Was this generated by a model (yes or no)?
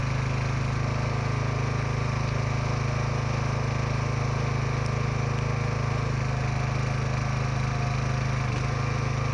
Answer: no